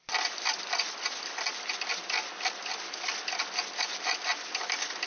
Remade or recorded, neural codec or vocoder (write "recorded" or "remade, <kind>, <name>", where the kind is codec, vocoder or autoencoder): recorded